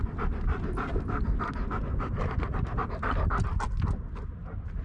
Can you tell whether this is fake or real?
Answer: real